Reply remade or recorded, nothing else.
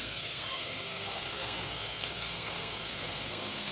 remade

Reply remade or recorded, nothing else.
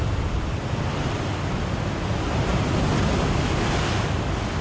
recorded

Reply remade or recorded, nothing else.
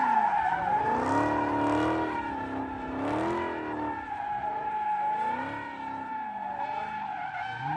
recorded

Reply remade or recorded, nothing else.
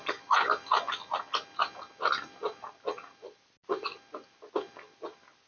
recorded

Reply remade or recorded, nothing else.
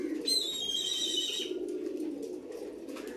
recorded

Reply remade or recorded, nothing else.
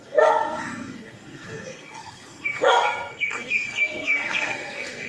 remade